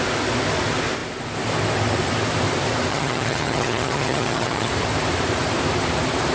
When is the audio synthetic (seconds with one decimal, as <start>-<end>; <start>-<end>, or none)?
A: 2.9-4.7